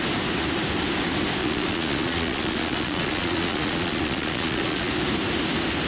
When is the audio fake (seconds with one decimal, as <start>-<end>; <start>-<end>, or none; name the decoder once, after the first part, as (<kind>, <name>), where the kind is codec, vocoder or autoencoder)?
1.4-4.9 (vocoder, Vocos)